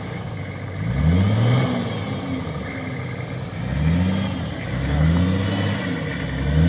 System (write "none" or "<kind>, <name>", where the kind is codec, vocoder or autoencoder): none